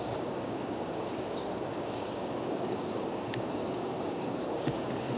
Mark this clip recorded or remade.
remade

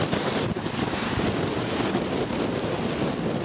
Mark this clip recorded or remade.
recorded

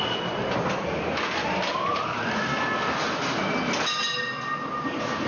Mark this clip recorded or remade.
recorded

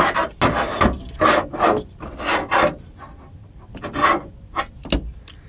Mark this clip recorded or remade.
recorded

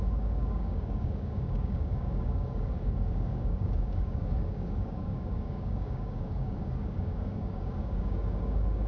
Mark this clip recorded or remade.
remade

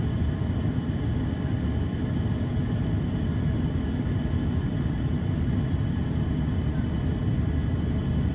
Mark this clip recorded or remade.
recorded